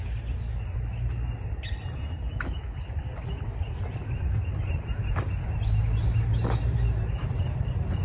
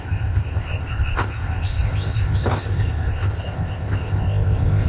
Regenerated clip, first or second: second